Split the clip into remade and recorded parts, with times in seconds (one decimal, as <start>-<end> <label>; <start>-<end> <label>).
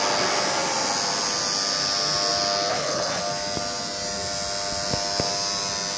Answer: 0.0-2.7 recorded; 2.7-3.2 remade; 3.2-6.0 recorded